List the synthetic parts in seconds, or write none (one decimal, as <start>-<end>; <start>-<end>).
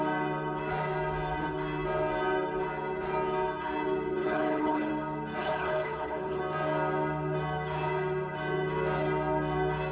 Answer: 4.2-4.9; 5.4-6.4